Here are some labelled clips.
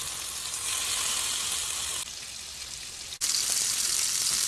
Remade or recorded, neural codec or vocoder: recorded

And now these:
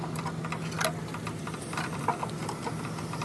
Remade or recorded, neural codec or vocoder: recorded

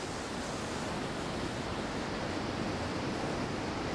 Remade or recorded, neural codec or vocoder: recorded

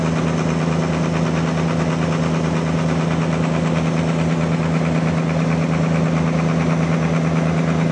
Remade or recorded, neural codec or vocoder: recorded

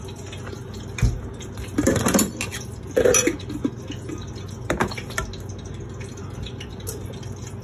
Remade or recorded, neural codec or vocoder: recorded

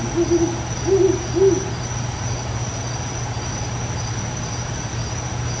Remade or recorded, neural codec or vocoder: recorded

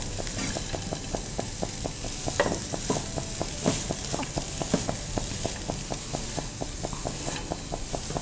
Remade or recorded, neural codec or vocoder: recorded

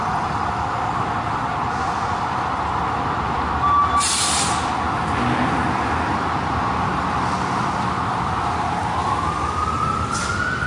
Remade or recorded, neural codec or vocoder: recorded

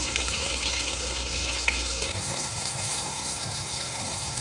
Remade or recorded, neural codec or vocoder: remade, codec, SNAC